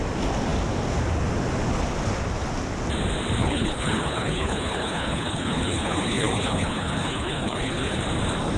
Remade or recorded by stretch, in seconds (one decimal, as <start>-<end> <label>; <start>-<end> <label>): 0.0-3.4 recorded; 3.4-8.0 remade; 8.0-8.6 recorded